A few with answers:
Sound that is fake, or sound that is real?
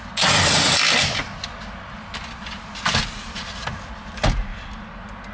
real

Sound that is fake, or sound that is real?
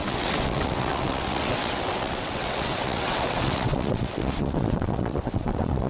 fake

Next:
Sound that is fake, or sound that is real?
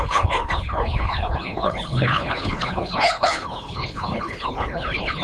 fake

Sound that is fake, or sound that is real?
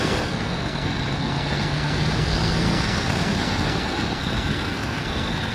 fake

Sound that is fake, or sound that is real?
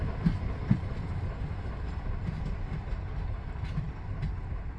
real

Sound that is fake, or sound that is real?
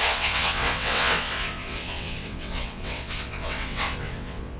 fake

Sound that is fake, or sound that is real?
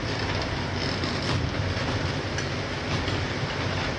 real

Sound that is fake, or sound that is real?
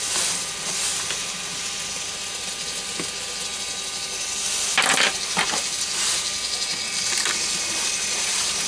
real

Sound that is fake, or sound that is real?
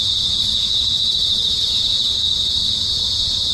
fake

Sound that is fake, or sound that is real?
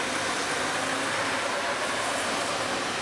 real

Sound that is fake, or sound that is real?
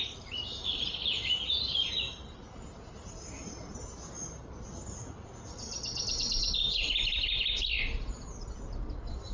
real